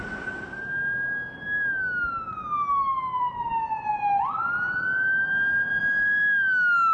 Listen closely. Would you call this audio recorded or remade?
recorded